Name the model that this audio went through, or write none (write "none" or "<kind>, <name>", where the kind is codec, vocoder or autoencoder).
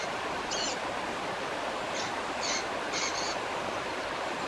none